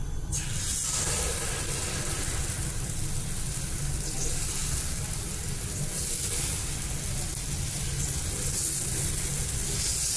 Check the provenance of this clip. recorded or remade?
recorded